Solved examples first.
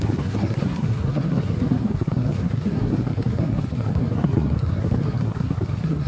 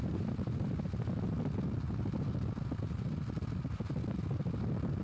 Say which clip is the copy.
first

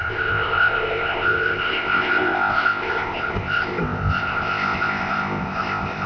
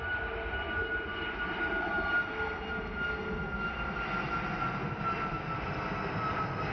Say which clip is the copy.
first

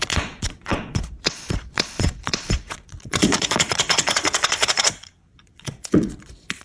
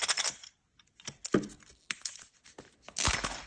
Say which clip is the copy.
first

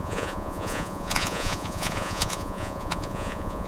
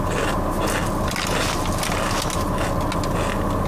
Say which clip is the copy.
first